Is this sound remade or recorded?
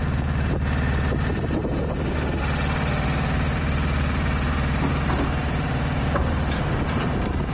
remade